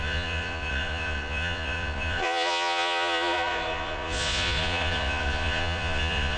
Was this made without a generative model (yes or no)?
no